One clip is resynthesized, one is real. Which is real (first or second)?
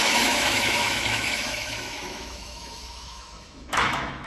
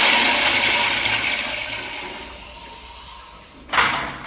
second